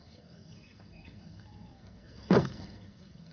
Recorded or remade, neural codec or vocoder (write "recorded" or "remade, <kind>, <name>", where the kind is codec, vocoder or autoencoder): remade, codec, SNAC